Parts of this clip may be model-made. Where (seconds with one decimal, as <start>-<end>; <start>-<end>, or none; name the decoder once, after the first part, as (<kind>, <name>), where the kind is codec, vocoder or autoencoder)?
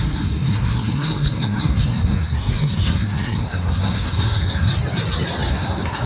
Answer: 0.0-4.7 (codec, SNAC); 5.5-6.1